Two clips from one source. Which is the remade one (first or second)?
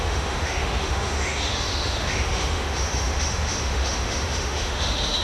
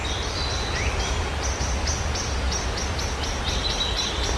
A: first